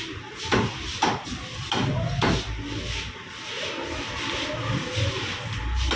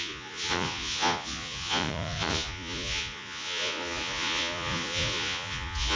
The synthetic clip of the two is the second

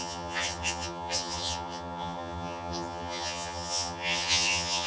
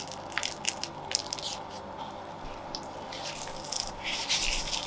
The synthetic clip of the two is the first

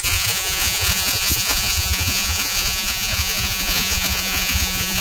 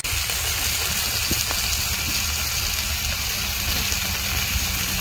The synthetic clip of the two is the first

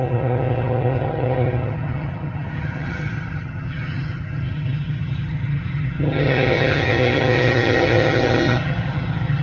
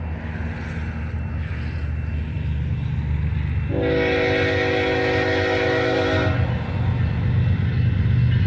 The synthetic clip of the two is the first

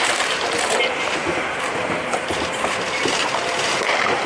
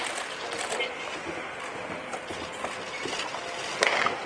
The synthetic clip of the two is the first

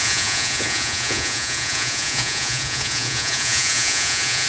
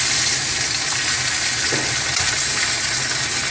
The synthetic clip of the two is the first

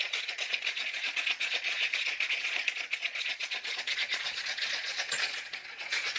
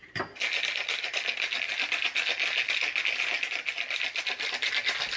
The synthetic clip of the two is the first